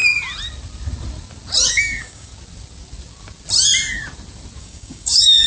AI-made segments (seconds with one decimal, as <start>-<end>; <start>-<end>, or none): 1.7-2.3; 4.6-5.5

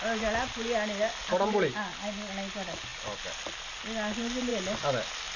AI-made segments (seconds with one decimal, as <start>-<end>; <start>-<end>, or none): none

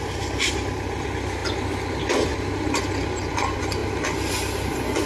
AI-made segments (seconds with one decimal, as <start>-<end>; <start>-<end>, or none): none

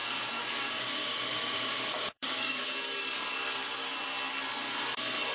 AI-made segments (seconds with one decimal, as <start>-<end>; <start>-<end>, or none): 0.0-2.6

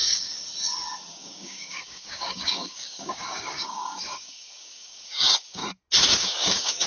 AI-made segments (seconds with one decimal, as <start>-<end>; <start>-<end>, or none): 0.0-0.5; 1.1-5.6; 6.2-6.9

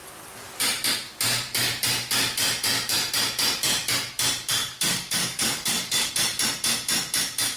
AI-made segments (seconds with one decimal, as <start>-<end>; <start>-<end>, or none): 4.6-6.1

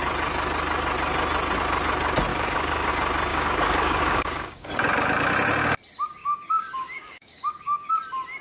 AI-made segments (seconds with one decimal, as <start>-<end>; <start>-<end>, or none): 2.3-2.9; 3.3-4.7; 6.2-7.9

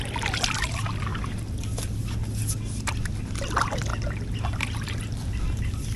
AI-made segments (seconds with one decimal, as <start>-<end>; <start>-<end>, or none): none